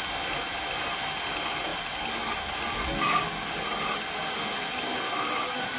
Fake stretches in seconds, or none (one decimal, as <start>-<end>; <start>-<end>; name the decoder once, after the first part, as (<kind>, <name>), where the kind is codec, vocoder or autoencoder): none